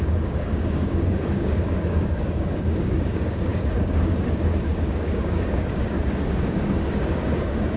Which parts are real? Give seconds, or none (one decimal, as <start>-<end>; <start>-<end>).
none